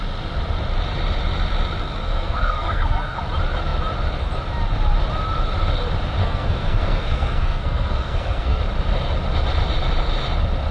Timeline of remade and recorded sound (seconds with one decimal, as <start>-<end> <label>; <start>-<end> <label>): 0.0-2.0 recorded; 2.0-3.2 remade; 3.2-6.2 recorded; 6.2-8.6 remade; 8.6-10.7 recorded